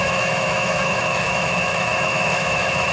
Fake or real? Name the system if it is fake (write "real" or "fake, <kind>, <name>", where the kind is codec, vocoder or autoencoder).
fake, autoencoder, DAC-VAE